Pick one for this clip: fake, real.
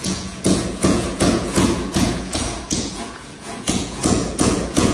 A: fake